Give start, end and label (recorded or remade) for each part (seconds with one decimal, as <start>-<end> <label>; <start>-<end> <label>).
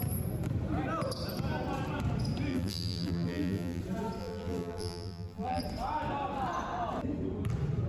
0.0-2.5 recorded; 2.5-3.8 remade; 3.8-4.2 recorded; 4.2-5.6 remade; 5.6-7.9 recorded